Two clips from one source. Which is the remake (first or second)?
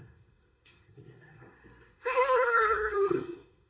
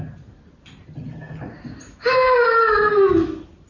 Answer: first